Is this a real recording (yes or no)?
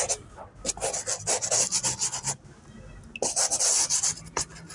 yes